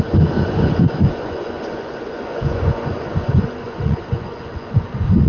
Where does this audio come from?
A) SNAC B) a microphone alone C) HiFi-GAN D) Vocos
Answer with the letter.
D